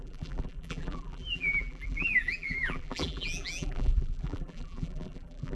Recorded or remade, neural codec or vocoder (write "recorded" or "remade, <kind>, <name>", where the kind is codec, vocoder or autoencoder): remade, vocoder, BigVGAN v2